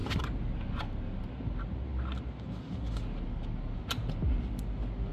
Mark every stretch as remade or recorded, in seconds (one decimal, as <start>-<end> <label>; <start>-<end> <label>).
0.0-5.1 recorded